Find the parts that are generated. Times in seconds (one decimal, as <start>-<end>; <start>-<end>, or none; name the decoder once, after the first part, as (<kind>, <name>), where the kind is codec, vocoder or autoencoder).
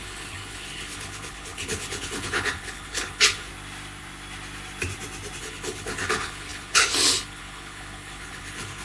0.0-3.5 (codec, HILCodec); 5.4-8.8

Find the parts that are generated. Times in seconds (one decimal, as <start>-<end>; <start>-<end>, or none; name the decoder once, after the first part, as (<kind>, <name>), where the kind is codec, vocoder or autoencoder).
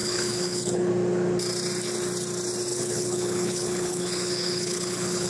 0.0-0.9 (codec, HILCodec); 2.7-5.3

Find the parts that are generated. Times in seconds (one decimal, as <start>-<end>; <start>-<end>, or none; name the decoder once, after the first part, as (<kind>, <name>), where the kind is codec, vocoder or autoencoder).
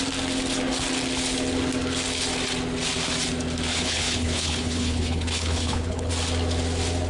3.7-6.1 (codec, HILCodec)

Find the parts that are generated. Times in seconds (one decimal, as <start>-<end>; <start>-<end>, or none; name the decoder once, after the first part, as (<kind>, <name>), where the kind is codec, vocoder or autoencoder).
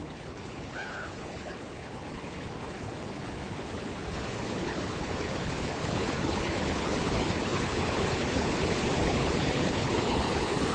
0.0-10.7 (codec, HILCodec)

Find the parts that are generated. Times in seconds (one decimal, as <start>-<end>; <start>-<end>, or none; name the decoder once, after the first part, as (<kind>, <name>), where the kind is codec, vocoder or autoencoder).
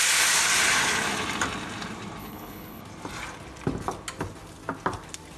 2.2-2.8 (codec, HILCodec)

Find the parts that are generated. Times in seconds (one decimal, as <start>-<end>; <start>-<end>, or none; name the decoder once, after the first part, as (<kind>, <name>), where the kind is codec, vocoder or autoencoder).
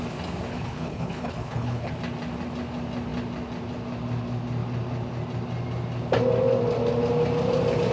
0.5-1.9 (codec, HILCodec)